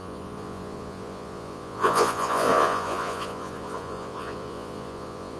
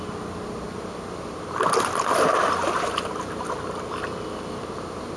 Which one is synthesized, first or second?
first